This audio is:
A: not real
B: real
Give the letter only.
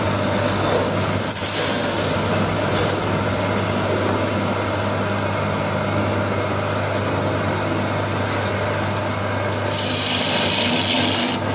B